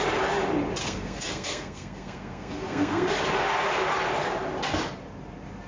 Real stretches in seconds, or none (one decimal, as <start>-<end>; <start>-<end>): 0.0-0.8; 3.1-5.7